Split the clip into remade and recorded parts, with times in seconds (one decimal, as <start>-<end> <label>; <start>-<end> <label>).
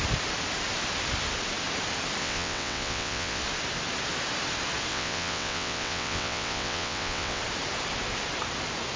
0.0-2.2 recorded; 2.2-3.4 remade; 3.4-4.9 recorded; 4.9-7.4 remade; 7.4-9.0 recorded